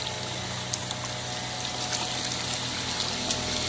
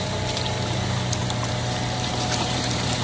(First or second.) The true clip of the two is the first